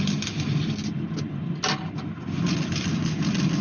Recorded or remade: recorded